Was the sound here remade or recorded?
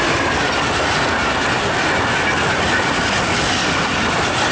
recorded